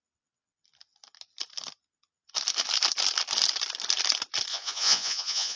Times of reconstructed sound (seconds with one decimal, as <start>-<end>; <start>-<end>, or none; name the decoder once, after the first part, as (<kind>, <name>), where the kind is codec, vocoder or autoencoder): 4.5-5.6 (vocoder, Vocos)